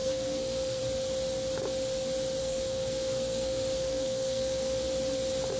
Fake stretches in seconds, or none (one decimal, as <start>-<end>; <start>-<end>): 0.0-0.8; 2.4-4.8